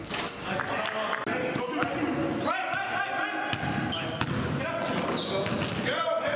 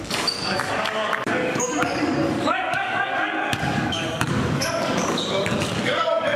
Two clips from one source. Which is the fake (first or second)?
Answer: second